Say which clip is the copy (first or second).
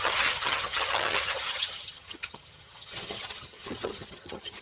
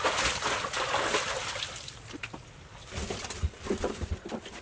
first